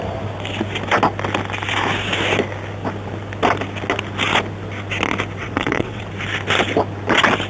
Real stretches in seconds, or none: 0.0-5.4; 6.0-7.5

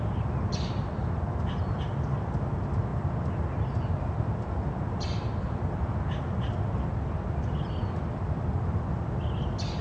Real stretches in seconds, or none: 0.0-9.8

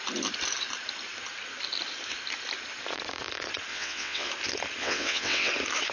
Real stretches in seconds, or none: 0.0-3.7; 4.3-4.8; 5.5-5.9

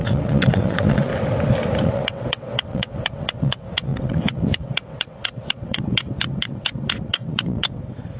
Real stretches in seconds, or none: 1.1-1.8

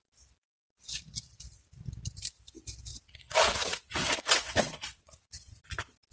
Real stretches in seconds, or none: 0.0-2.9; 5.6-6.1